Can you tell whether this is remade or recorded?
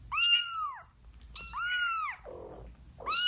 recorded